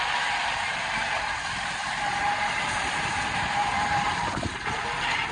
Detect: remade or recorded remade